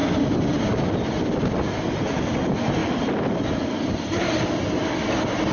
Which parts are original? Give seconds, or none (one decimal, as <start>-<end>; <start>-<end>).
0.0-5.5